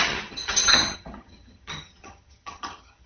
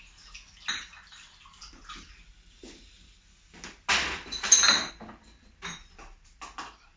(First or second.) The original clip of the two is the second